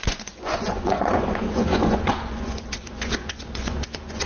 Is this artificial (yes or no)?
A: yes